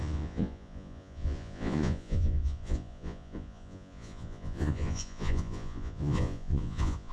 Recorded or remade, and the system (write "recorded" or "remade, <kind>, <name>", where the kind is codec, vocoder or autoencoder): remade, vocoder, Vocos